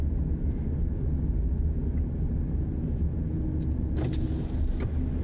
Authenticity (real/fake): real